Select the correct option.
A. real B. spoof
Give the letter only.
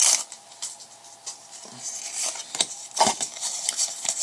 A